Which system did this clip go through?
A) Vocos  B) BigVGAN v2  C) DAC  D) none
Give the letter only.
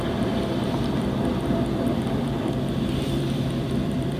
B